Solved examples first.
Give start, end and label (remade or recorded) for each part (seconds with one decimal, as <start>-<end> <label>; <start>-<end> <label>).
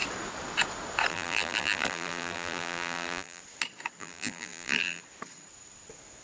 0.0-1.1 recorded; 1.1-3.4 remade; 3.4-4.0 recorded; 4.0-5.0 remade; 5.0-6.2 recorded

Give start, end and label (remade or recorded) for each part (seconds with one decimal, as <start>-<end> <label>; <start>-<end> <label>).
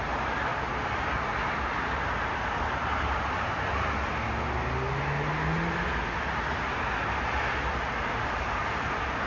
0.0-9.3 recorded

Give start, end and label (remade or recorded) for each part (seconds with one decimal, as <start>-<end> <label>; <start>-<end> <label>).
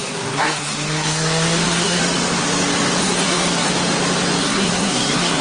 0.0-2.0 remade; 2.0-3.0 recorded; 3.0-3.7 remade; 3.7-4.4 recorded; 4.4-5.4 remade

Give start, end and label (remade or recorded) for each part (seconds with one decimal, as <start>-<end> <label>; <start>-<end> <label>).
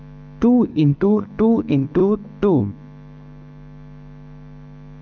0.0-0.7 recorded; 0.7-1.3 remade; 1.3-5.0 recorded